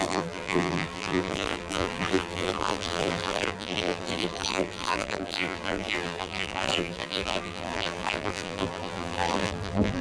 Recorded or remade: remade